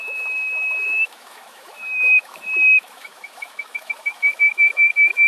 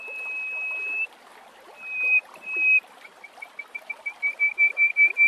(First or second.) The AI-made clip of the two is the first